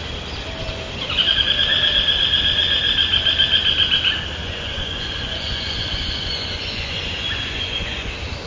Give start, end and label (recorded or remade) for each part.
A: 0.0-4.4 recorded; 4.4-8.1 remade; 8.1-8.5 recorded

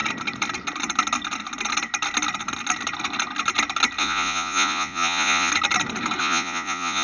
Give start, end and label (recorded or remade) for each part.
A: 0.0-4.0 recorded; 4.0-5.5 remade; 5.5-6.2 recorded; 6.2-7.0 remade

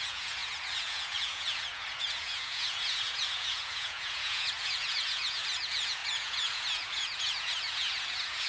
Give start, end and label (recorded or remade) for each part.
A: 0.0-8.5 remade